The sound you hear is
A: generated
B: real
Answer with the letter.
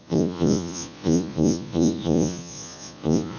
A